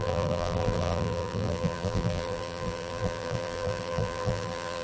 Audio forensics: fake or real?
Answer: fake